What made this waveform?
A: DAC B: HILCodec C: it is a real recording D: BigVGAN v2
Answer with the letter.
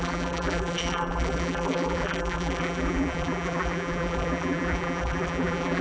D